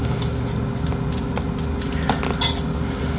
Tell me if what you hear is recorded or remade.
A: recorded